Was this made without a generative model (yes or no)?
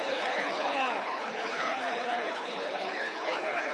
no